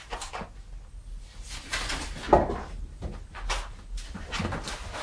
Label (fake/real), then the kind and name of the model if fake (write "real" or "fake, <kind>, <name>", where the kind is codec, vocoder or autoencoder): real